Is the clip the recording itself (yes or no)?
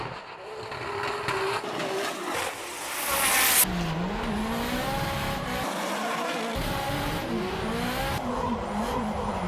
yes